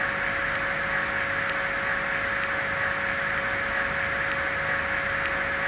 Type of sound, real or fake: real